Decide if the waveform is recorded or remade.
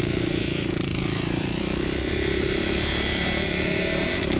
remade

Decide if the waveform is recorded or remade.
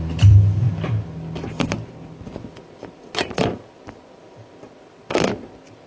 recorded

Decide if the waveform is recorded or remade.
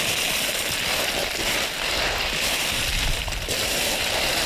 remade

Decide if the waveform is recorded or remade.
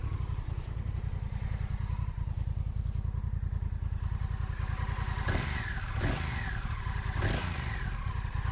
recorded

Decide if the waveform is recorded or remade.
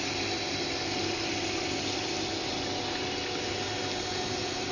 recorded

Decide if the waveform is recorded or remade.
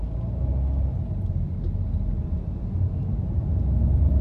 recorded